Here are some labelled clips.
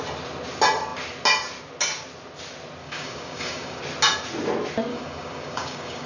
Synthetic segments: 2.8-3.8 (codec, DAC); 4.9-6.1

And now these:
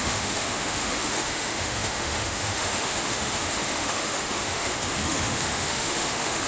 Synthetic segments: 0.0-6.5 (autoencoder, DAC-VAE)

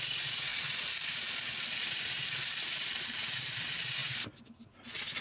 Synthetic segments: 0.5-3.6 (vocoder, BigVGAN v2)

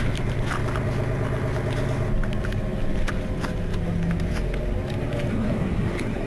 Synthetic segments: 5.3-6.3 (codec, SNAC)

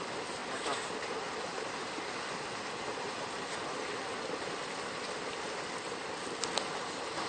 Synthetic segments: none

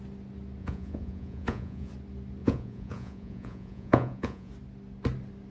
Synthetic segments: 0.6-1.9 (vocoder, Vocos); 2.4-4.5

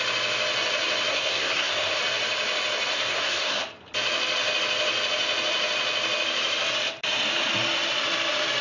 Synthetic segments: 1.1-2.0 (codec, SNAC); 2.9-3.6